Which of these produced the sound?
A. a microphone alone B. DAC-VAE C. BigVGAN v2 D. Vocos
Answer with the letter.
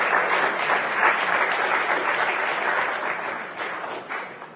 A